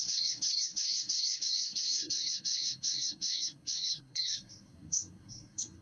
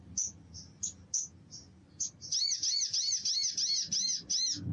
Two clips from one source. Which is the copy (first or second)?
first